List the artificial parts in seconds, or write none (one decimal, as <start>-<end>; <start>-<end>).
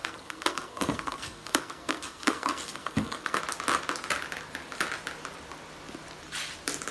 0.0-3.4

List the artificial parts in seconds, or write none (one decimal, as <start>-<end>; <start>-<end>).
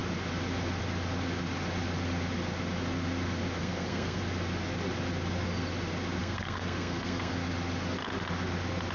3.6-4.2; 6.2-7.3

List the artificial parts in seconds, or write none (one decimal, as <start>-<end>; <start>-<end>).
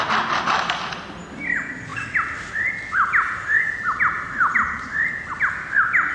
none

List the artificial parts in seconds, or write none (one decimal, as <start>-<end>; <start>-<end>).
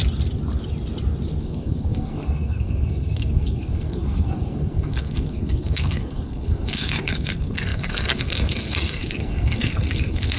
1.4-10.4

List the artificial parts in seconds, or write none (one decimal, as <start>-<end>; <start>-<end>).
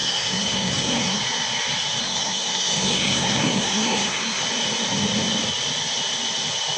0.0-1.2; 2.0-4.4